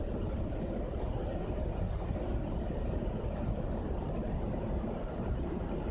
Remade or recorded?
recorded